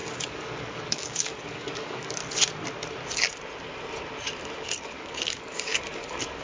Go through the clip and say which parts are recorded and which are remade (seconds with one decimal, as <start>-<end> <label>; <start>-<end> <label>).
0.0-2.2 remade; 2.2-4.4 recorded; 4.4-6.4 remade